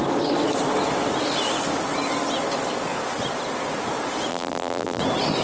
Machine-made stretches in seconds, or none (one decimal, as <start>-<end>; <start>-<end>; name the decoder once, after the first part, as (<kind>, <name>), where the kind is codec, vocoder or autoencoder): 4.3-5.0 (vocoder, BigVGAN v2)